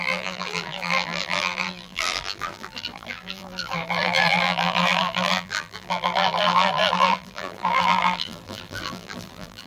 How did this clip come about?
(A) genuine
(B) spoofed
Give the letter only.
B